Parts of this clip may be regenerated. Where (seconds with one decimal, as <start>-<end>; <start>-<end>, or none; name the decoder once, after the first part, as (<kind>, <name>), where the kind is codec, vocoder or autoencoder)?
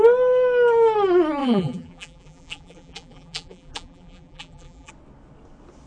1.4-4.9 (vocoder, BigVGAN v2)